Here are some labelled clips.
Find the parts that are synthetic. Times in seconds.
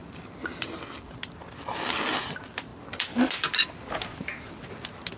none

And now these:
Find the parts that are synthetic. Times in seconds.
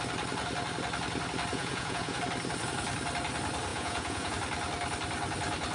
1.5-2.2 (vocoder, Vocos); 3.7-4.3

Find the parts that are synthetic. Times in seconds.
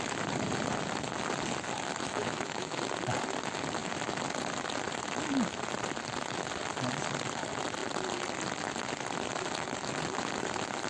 2.0-2.8 (autoencoder, DAC-VAE)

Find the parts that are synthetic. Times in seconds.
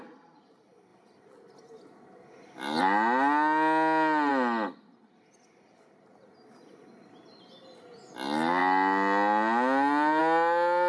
none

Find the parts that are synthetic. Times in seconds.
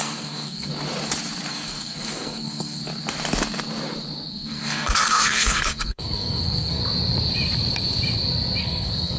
0.0-0.7 (codec, SNAC); 1.5-2.8; 4.3-6.8; 8.6-9.2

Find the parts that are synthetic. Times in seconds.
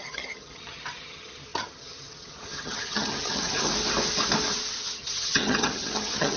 0.0-3.7 (vocoder, HiFi-GAN); 4.8-6.4